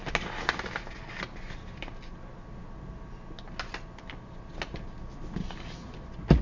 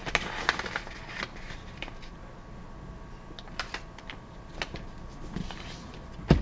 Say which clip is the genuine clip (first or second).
first